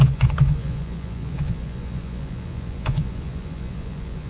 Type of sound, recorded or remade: remade